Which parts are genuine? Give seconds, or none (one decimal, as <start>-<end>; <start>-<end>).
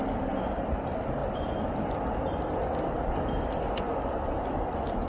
0.0-5.1